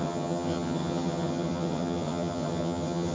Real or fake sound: fake